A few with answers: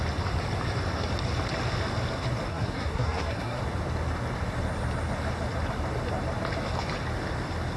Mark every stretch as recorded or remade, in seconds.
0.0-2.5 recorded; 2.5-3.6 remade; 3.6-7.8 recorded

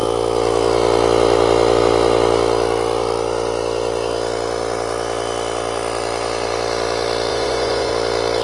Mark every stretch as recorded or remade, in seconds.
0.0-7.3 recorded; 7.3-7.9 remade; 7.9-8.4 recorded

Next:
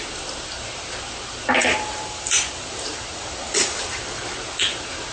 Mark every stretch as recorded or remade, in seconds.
0.0-1.6 recorded; 1.6-4.2 remade; 4.2-5.1 recorded

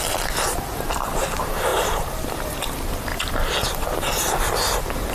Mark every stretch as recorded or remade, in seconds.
0.0-1.7 recorded; 1.7-2.7 remade; 2.7-3.1 recorded; 3.1-3.8 remade; 3.8-5.1 recorded